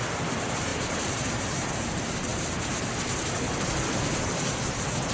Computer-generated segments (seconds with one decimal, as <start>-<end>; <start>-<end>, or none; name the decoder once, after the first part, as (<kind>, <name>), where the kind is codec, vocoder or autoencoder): 0.7-1.9 (vocoder, BigVGAN v2); 2.3-3.0